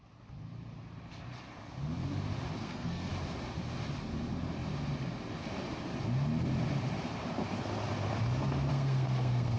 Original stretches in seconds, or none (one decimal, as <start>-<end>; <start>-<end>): 0.0-2.6; 3.1-8.7